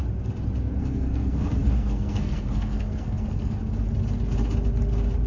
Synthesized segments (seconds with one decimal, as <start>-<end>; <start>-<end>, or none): 0.8-3.6